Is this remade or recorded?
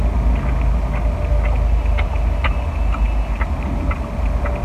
recorded